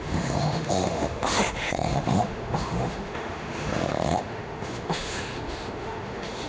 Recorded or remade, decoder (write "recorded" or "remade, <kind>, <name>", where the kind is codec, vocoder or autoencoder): remade, autoencoder, DAC-VAE